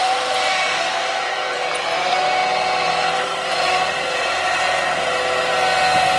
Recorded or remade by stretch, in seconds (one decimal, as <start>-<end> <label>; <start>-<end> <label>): 0.0-1.7 remade; 1.7-3.8 recorded; 3.8-5.2 remade; 5.2-6.2 recorded